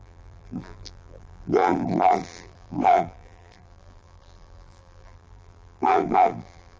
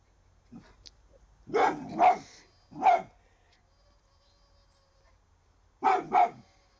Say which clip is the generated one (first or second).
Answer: first